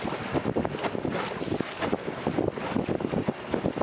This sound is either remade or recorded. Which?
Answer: recorded